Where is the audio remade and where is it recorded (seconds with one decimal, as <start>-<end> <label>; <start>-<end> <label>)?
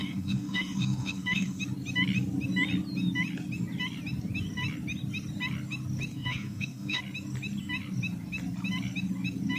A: 0.0-1.6 remade; 1.6-6.1 recorded; 6.1-7.0 remade; 7.0-9.6 recorded